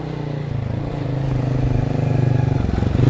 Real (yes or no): yes